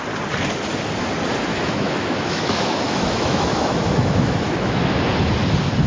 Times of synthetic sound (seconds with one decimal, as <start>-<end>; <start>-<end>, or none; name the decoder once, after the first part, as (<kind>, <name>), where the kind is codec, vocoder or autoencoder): 1.5-4.8 (autoencoder, DAC-VAE)